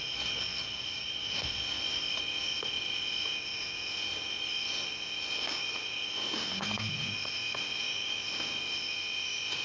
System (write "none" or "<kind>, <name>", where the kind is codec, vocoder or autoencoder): none